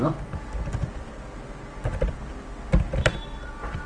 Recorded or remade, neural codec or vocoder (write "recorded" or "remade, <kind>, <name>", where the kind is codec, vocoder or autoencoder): recorded